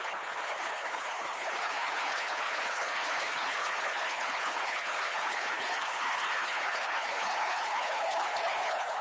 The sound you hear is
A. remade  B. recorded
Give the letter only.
A